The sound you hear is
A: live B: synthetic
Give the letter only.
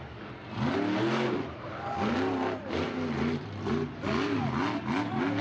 A